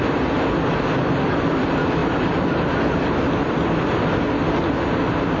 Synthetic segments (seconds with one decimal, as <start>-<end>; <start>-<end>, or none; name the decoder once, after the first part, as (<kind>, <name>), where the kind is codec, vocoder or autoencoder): none